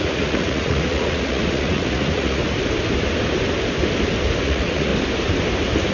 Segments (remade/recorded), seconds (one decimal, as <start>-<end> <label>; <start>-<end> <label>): 0.0-2.4 remade; 2.4-4.4 recorded; 4.4-4.9 remade; 4.9-5.9 recorded